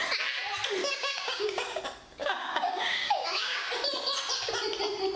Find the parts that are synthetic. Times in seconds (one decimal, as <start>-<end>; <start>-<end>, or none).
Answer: 0.8-1.8; 2.2-3.7